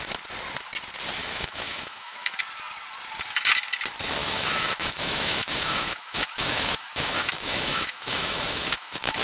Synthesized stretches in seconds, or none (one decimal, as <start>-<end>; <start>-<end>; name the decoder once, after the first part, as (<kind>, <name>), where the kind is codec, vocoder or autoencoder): 1.2-2.4 (autoencoder, DAC-VAE); 4.2-9.2